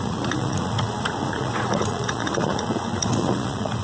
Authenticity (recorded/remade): remade